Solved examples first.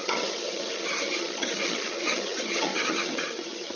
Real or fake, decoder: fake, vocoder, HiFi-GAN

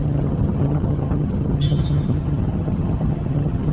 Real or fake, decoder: fake, vocoder, HiFi-GAN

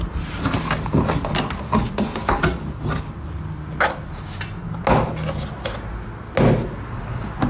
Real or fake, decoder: real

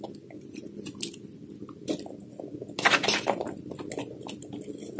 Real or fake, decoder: real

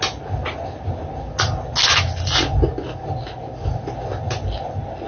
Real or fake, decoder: real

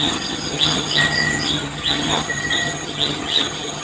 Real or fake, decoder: fake, vocoder, HiFi-GAN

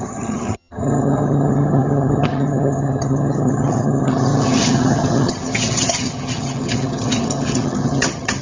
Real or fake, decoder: fake, vocoder, HiFi-GAN